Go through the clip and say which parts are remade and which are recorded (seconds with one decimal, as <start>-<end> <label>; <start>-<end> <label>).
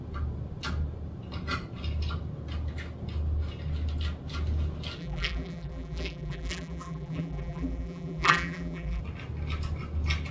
0.0-5.0 recorded; 5.0-9.0 remade; 9.0-10.3 recorded